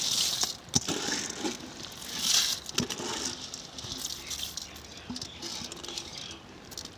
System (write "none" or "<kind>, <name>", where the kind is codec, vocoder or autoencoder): none